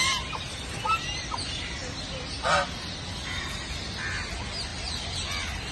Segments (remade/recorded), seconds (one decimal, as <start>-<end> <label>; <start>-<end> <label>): 0.0-5.7 recorded